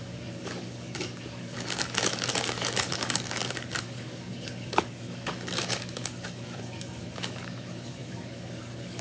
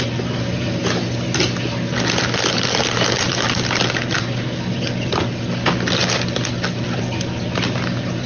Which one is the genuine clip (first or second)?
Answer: second